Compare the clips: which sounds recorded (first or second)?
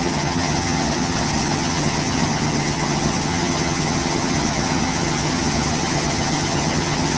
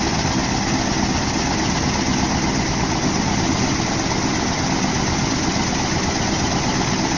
second